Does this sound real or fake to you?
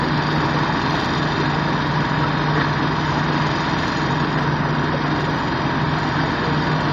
real